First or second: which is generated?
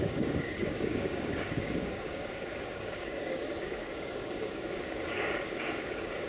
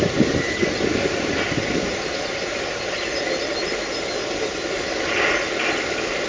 first